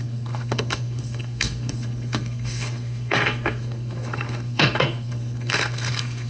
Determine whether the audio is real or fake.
fake